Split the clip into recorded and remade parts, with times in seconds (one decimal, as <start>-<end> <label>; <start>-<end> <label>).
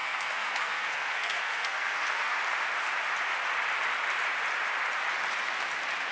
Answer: 0.0-2.3 remade; 2.3-6.1 recorded